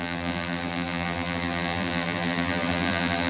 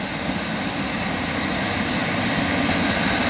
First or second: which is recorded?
second